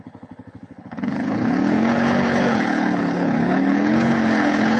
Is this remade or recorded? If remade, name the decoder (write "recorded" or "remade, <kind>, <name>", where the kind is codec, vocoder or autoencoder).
remade, codec, HILCodec